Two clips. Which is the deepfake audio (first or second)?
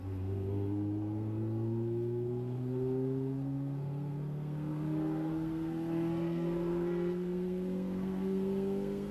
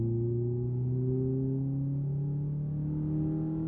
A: first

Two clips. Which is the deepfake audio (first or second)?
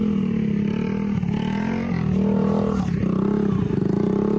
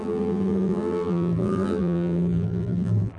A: second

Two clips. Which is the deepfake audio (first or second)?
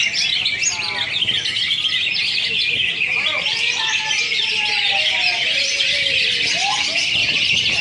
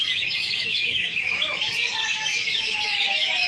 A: second